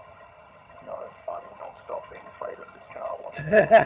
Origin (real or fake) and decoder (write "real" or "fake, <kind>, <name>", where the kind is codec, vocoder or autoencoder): fake, vocoder, HiFi-GAN